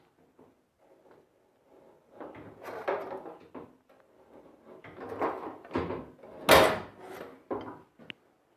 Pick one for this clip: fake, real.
real